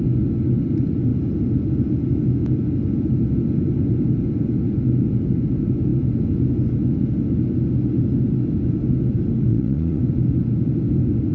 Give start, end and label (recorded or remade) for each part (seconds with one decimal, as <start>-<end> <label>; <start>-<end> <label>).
0.0-9.5 recorded; 9.5-10.0 remade; 10.0-11.3 recorded